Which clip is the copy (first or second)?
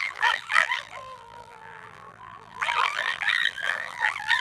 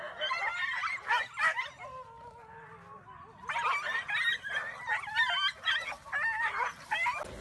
first